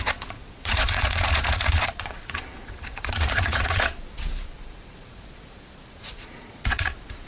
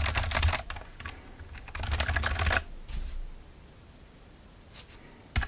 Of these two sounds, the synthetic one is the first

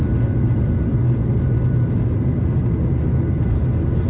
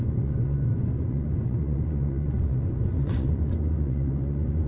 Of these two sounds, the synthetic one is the second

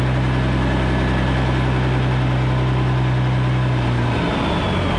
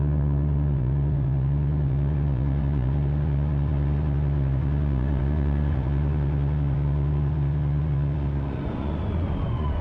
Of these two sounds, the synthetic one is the second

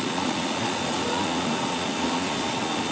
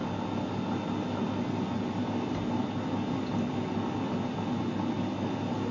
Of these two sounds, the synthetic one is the first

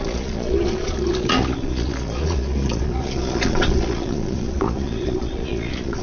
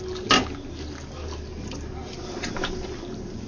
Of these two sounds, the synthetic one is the first